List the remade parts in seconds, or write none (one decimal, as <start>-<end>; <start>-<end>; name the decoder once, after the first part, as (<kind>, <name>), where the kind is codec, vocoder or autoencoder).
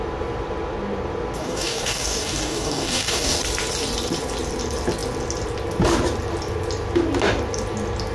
1.4-3.4 (codec, DAC)